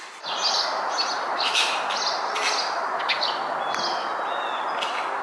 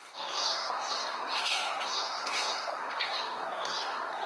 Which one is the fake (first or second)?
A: second